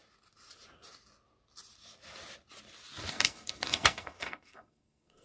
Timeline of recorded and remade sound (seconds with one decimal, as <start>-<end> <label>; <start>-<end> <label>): 0.0-3.1 recorded; 3.1-5.2 remade